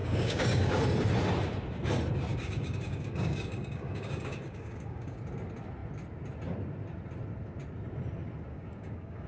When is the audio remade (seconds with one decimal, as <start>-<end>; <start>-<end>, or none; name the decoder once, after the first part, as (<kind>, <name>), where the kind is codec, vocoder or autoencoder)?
0.0-0.8 (codec, DAC); 2.3-5.2; 8.5-9.3